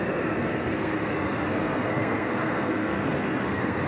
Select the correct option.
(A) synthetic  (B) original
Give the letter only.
A